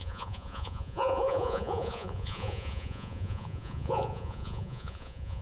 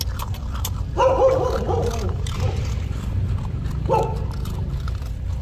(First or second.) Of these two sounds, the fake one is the first